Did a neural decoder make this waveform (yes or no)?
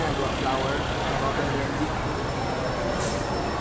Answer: no